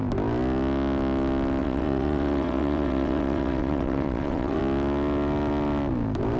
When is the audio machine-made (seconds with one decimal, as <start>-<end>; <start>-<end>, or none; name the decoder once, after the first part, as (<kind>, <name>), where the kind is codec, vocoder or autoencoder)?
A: 1.6-4.6 (vocoder, WaveNeXt)